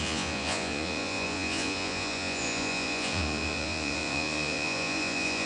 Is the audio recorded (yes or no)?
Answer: no